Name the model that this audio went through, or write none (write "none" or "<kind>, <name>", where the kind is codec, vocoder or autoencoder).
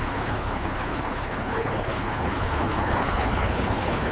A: codec, HILCodec